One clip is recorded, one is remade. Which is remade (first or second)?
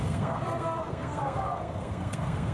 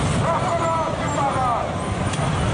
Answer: first